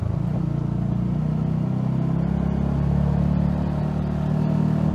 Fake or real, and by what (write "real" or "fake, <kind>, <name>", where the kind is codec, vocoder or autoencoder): real